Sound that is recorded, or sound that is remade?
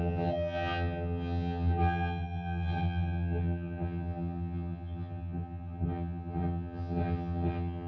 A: remade